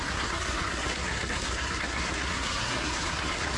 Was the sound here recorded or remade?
remade